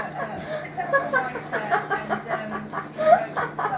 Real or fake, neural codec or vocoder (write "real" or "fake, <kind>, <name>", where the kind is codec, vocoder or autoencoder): real